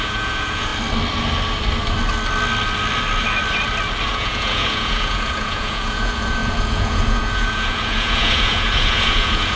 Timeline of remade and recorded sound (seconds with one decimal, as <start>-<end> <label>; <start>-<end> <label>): 0.0-0.7 remade; 0.7-4.1 recorded; 4.1-9.6 remade